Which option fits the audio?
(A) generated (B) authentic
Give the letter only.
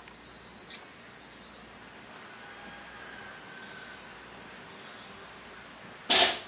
B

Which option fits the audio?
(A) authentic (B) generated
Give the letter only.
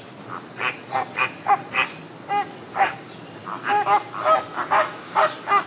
A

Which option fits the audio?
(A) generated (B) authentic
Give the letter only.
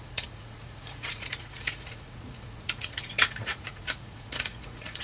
A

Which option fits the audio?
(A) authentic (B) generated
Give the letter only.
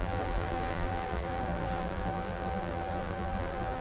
B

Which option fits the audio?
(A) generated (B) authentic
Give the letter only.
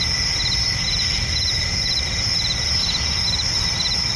B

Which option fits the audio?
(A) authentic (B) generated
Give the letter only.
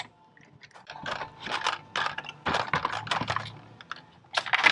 A